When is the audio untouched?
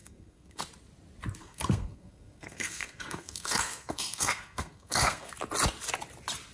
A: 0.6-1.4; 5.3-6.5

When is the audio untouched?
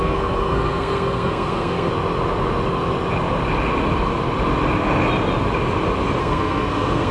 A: 1.9-6.2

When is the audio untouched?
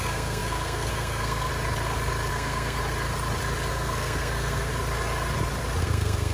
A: 1.5-2.3; 2.8-3.7; 4.7-5.8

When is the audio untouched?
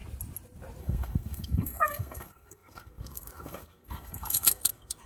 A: 0.0-0.8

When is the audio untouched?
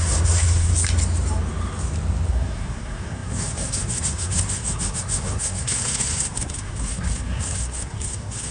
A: 0.7-2.3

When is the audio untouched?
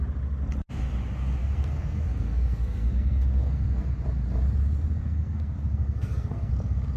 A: 0.0-1.4; 3.9-5.0; 6.5-7.0